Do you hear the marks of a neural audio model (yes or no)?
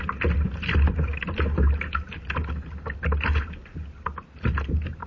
no